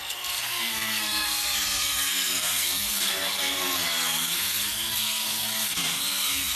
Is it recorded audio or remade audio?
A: remade